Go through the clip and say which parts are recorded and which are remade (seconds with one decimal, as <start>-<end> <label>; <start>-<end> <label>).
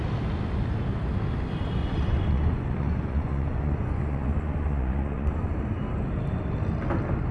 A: 0.0-1.8 recorded; 1.8-5.5 remade; 5.5-7.3 recorded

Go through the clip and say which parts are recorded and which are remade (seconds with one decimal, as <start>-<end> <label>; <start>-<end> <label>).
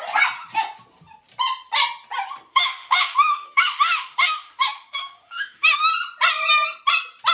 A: 0.0-2.5 recorded; 2.5-5.9 remade; 5.9-7.3 recorded